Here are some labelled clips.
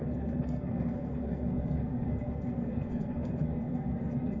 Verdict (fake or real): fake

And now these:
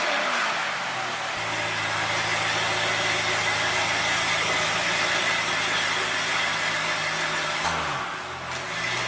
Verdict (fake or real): real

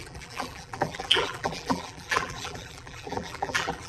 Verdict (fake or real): fake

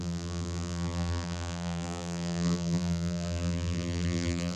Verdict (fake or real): fake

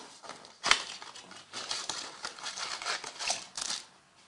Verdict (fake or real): real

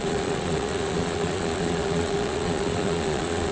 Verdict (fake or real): fake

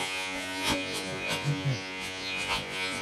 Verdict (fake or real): fake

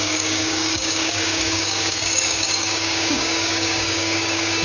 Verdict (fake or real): fake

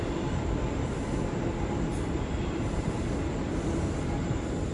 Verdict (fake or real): fake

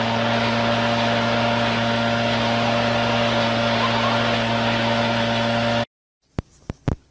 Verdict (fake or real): real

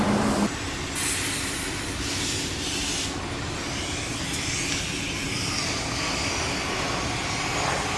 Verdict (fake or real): real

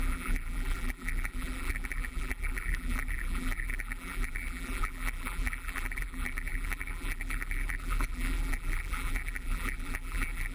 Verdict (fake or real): fake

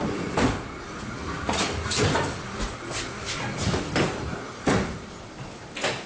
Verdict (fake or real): real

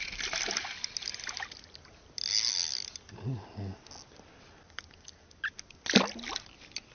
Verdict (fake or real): real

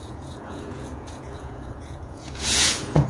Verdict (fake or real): fake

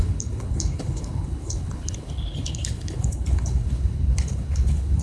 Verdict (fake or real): fake